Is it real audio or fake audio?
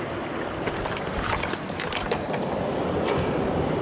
real